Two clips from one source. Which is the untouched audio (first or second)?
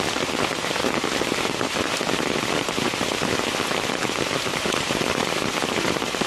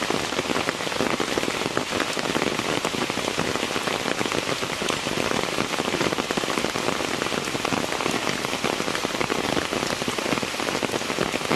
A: second